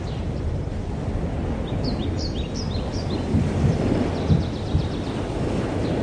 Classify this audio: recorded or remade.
recorded